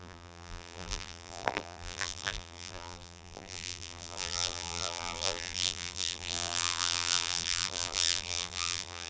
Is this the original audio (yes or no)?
no